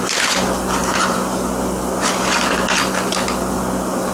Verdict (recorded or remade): recorded